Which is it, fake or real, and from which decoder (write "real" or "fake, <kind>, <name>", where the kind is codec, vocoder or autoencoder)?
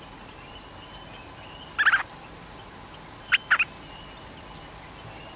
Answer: real